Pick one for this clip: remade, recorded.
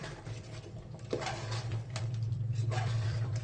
remade